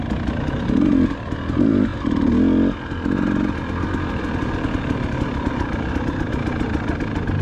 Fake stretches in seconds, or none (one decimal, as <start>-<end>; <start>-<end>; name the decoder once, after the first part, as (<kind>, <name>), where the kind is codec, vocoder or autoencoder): none